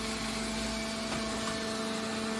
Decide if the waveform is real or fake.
real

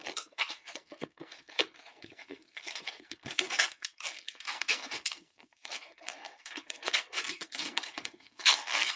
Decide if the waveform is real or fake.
fake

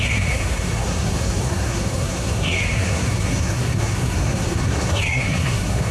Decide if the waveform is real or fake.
fake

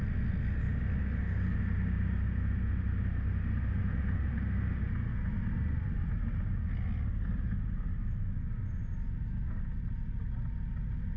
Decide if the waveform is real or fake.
real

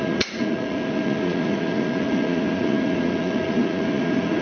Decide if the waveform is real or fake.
fake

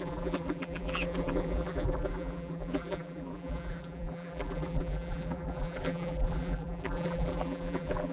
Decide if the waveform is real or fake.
fake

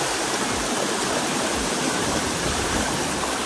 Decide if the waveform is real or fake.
fake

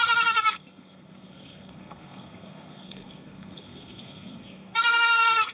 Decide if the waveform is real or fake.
fake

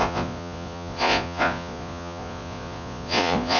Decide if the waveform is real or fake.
fake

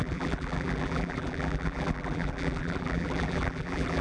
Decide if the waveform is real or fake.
fake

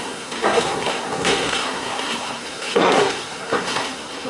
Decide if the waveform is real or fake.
fake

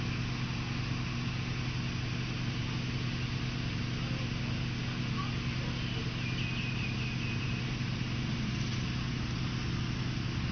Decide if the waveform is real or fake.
real